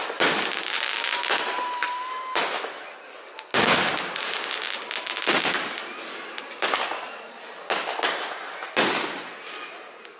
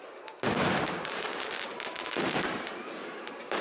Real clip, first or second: first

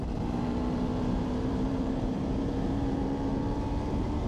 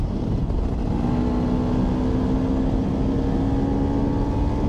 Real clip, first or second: second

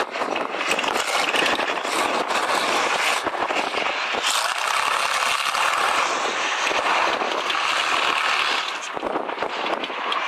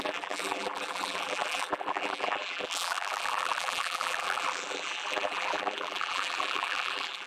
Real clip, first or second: first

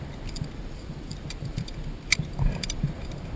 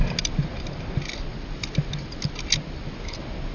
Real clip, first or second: second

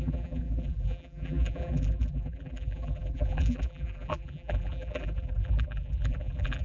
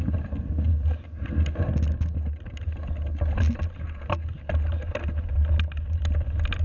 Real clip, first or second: second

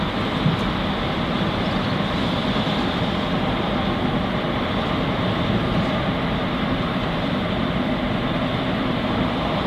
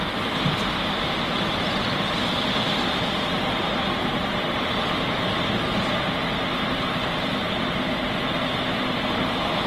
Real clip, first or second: second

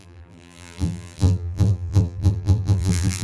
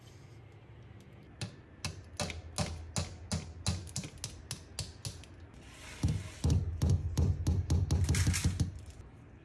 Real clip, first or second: second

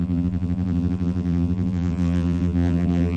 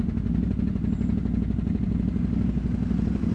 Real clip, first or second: second